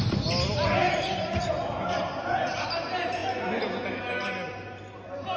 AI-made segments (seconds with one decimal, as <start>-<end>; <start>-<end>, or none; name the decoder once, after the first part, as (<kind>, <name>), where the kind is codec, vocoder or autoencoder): none

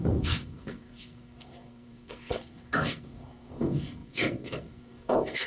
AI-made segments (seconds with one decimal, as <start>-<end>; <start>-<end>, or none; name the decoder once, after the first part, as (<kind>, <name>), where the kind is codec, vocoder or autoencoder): 0.0-5.5 (codec, SNAC)

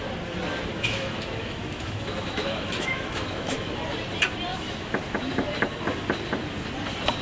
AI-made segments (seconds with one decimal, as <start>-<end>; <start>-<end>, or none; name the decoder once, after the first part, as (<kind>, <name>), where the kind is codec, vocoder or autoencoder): 0.7-3.8 (autoencoder, DAC-VAE); 4.5-5.0

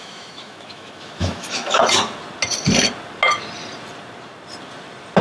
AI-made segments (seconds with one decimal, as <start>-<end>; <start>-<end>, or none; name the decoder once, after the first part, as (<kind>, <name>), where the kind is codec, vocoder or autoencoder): 0.0-1.8 (autoencoder, DAC-VAE)

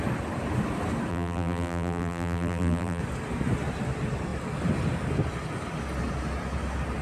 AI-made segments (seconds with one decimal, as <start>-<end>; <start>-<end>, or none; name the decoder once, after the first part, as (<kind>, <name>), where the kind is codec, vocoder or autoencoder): 1.1-3.0 (vocoder, BigVGAN v2)

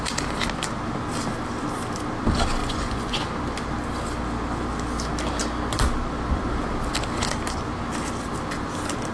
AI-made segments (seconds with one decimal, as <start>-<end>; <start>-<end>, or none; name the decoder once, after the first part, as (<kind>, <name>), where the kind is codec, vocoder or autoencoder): 2.6-3.2 (vocoder, Vocos)

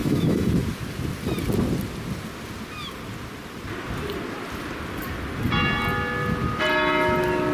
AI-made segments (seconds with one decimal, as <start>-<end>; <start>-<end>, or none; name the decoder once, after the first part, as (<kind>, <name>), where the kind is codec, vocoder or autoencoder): 0.0-0.5 (autoencoder, DAC-VAE)

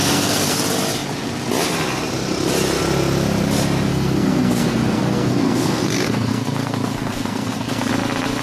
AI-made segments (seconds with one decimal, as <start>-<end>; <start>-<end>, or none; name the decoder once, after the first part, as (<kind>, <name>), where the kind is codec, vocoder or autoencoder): 0.0-0.6 (codec, SNAC); 3.9-7.9